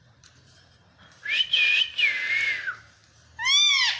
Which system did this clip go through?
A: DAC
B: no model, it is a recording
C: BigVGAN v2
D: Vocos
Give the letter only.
B